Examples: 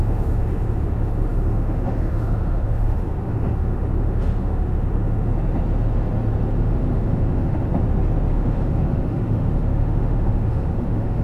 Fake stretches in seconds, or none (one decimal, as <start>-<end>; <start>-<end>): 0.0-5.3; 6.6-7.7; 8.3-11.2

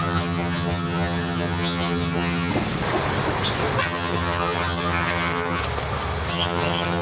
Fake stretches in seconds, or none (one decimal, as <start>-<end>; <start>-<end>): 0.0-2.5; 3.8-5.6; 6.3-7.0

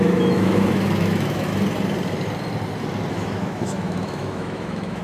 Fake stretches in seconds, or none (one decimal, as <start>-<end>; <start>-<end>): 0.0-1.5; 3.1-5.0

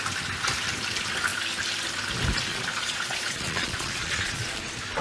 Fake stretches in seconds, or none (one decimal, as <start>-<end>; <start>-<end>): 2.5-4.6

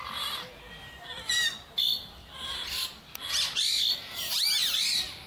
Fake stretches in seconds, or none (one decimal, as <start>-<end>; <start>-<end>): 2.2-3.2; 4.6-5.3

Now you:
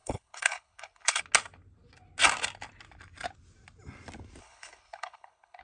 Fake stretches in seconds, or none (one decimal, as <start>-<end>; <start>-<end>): 0.0-1.2; 4.4-5.6

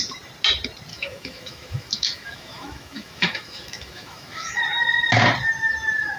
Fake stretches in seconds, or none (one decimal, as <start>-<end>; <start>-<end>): 0.9-4.6

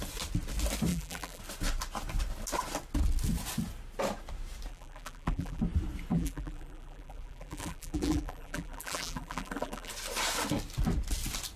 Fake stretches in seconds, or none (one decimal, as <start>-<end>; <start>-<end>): 0.9-1.4; 4.7-5.6; 6.1-9.9